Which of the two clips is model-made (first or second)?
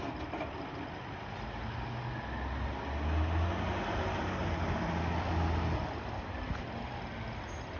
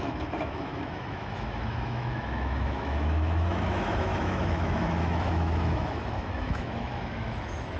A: second